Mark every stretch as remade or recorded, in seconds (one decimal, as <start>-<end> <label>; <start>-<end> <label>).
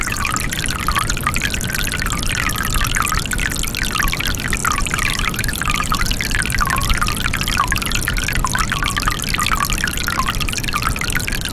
0.0-4.6 recorded; 4.6-6.0 remade; 6.0-11.5 recorded